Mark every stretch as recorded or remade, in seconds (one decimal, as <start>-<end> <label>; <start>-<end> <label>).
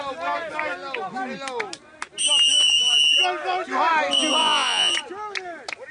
0.0-4.4 recorded; 4.4-4.9 remade; 4.9-5.9 recorded